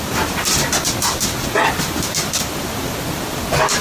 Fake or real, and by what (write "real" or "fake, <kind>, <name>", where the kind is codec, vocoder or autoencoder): real